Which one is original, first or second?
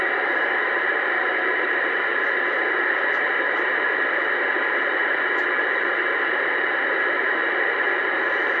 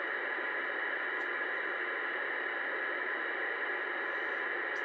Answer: second